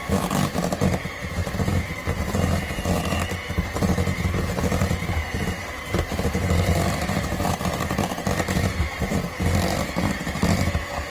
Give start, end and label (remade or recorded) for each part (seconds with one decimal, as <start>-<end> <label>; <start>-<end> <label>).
0.0-1.4 recorded; 1.4-2.8 remade; 2.8-4.8 recorded; 4.8-8.1 remade; 8.1-11.1 recorded